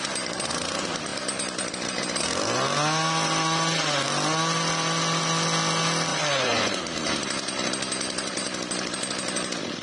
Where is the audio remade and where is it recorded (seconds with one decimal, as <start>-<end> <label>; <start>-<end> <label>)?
0.0-6.1 recorded; 6.1-6.8 remade; 6.8-9.8 recorded